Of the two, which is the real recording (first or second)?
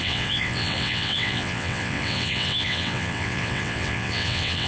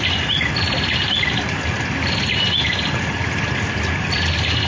second